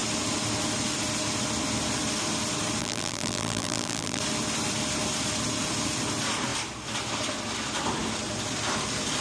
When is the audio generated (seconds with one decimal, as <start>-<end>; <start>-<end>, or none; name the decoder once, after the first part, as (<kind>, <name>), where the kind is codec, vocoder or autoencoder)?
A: 2.8-4.2 (vocoder, BigVGAN v2)